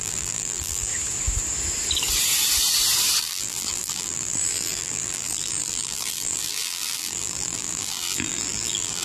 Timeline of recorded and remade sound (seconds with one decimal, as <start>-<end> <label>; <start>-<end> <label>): 0.0-0.9 remade; 0.9-3.2 recorded; 3.2-9.0 remade